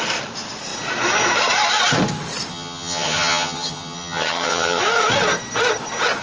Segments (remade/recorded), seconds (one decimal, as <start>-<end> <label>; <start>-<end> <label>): 0.0-2.5 recorded; 2.5-4.8 remade; 4.8-6.2 recorded